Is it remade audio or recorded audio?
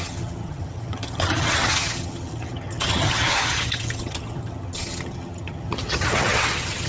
remade